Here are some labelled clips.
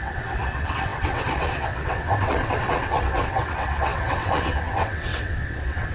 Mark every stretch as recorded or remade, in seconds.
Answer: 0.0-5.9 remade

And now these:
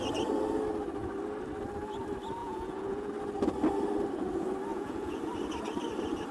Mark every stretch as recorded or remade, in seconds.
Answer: 0.0-2.4 recorded; 2.4-3.1 remade; 3.1-4.7 recorded; 4.7-5.2 remade; 5.2-6.3 recorded

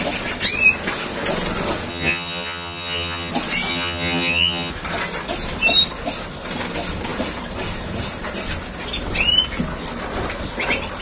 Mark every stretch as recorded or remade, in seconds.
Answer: 0.0-1.9 recorded; 1.9-3.3 remade; 3.3-3.7 recorded; 3.7-4.7 remade; 4.7-11.0 recorded